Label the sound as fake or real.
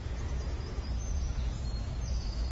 fake